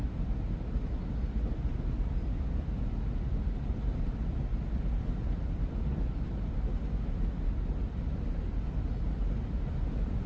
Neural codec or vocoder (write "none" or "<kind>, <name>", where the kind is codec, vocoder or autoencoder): none